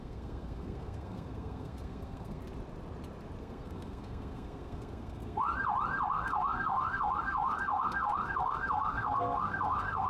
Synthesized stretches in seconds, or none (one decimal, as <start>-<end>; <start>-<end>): 0.0-2.4; 3.4-5.5; 6.1-10.1